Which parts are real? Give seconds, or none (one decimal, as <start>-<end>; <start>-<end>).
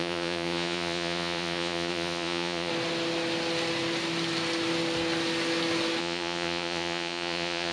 2.7-6.0